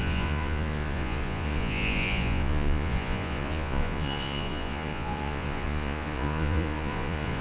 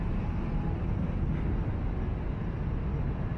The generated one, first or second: first